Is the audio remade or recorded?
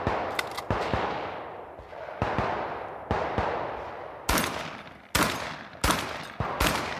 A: recorded